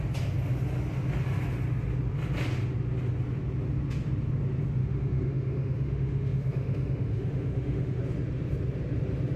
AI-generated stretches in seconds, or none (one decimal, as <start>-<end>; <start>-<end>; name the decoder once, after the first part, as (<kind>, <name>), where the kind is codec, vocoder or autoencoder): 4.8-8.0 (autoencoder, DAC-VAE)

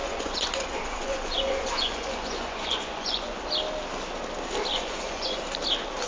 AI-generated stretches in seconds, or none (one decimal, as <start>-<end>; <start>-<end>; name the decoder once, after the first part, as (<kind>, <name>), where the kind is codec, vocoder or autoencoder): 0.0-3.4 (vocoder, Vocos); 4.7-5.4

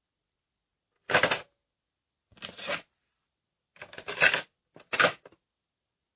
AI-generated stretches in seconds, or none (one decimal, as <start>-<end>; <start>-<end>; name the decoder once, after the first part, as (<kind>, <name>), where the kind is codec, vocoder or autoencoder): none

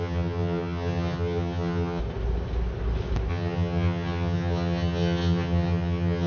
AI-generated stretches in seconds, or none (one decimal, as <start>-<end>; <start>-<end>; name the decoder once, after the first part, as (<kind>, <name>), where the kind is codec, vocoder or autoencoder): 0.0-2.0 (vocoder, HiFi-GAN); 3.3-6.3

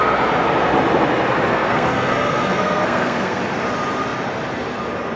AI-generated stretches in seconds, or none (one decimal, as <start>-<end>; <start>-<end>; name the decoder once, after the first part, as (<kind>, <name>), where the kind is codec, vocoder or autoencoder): 1.5-3.4 (codec, SNAC)

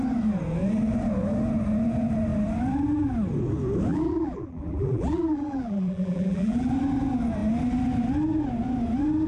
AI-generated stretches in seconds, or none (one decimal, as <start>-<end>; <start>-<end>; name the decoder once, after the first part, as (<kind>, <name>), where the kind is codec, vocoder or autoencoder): 3.9-6.7 (vocoder, BigVGAN v2)